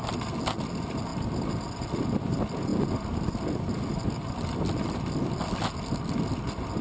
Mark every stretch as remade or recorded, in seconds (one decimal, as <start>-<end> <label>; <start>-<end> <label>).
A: 0.0-6.8 recorded